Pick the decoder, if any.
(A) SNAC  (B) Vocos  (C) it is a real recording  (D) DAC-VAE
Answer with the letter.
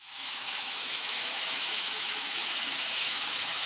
D